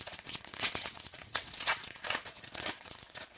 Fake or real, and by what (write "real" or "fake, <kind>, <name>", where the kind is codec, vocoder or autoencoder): fake, vocoder, WaveNeXt